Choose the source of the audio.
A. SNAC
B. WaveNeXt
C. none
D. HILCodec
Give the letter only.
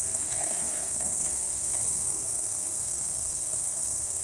A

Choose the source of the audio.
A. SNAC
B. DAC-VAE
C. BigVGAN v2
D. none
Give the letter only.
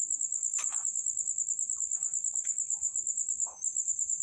B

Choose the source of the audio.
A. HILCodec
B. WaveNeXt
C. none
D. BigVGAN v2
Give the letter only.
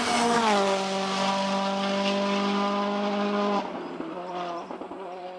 C